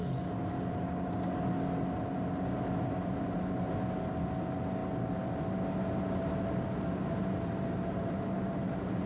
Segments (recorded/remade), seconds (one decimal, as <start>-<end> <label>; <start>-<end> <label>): 0.0-9.1 recorded